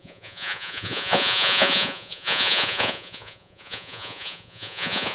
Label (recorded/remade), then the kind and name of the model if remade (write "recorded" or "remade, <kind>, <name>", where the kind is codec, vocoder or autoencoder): remade, vocoder, Vocos